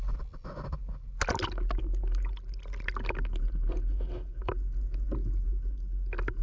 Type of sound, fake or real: real